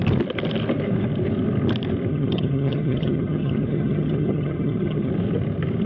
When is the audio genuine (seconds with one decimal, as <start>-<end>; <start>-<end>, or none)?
0.0-2.1; 5.1-5.9